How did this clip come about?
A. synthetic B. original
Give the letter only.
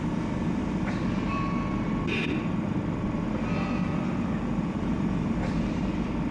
A